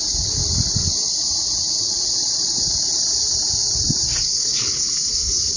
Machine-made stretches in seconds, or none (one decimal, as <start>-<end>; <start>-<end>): 4.2-5.6